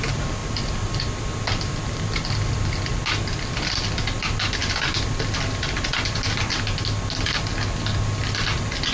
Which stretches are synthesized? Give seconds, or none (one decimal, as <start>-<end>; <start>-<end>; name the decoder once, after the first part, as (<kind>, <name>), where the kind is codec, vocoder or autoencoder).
none